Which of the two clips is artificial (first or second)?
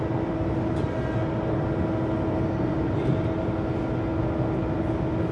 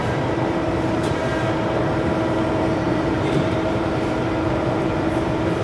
second